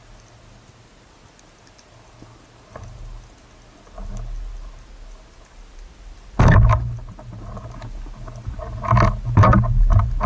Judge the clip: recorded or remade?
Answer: recorded